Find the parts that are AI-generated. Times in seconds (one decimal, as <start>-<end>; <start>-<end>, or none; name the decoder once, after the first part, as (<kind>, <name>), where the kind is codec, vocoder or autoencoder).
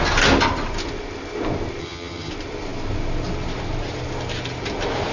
1.8-2.3 (vocoder, HiFi-GAN)